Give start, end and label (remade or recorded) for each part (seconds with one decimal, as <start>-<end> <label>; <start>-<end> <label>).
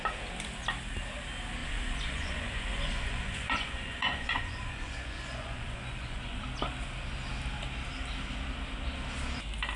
0.0-1.6 recorded; 1.6-6.4 remade; 6.4-9.8 recorded